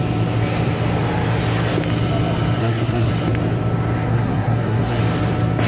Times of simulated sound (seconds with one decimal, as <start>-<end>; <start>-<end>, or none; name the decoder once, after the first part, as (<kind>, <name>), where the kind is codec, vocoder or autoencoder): 2.6-3.1 (codec, SNAC); 4.1-5.0